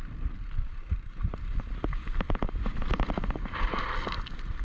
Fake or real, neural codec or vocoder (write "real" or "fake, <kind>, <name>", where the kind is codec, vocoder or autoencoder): real